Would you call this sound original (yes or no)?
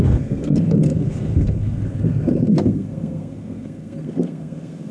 no